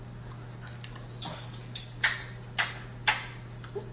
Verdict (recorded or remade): recorded